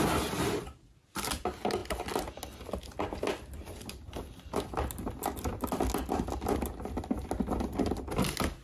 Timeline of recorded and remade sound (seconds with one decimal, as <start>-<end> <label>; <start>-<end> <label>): 0.0-8.6 recorded